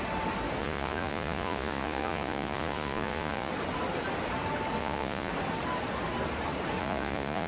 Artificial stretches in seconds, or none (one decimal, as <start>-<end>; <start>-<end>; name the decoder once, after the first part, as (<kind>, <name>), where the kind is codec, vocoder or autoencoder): 0.6-3.5 (vocoder, Vocos); 4.8-5.3; 6.8-7.5